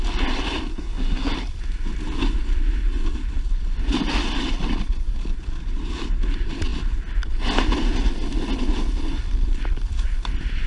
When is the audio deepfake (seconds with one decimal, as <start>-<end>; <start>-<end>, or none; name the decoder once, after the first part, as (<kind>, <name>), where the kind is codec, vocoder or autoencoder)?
0.7-1.3 (codec, SNAC)